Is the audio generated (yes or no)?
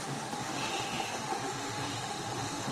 yes